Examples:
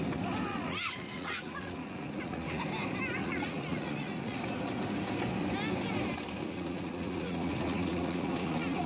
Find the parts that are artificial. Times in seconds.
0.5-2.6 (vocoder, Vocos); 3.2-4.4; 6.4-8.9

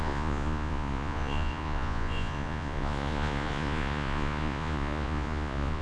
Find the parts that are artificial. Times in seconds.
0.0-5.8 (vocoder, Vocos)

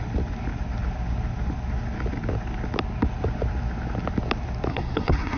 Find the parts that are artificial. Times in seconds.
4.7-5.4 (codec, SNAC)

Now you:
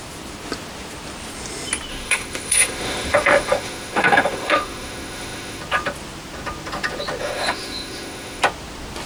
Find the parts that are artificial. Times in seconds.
1.9-5.6 (autoencoder, DAC-VAE); 7.2-8.4

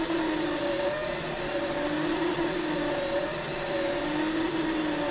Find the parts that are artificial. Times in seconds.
none

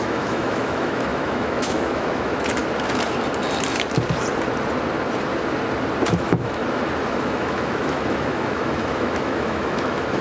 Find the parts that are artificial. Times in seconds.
0.0-2.6 (autoencoder, DAC-VAE); 6.1-6.6; 7.2-10.2